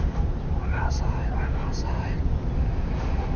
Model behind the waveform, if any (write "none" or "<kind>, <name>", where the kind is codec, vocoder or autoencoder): none